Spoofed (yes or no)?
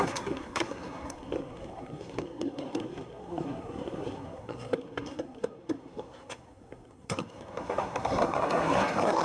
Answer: yes